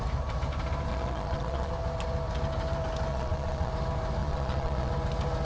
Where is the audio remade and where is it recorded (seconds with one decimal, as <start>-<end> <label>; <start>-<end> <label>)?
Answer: 0.0-0.9 recorded; 0.9-1.7 remade; 1.7-3.1 recorded; 3.1-3.7 remade; 3.7-4.2 recorded; 4.2-4.9 remade; 4.9-5.4 recorded